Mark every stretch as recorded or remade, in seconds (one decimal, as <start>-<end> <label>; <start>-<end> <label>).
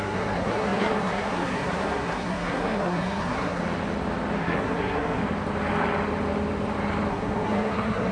0.0-3.6 remade; 3.6-4.4 recorded; 4.4-5.2 remade; 5.2-7.1 recorded; 7.1-8.1 remade